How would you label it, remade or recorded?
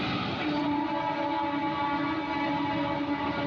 recorded